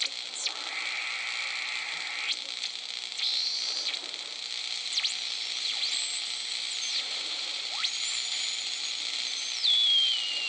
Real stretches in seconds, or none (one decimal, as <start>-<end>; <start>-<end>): 0.0-6.9; 7.6-10.5